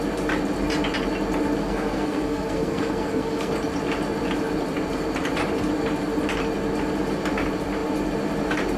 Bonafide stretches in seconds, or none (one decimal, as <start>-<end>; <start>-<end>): 0.0-1.6; 3.5-8.8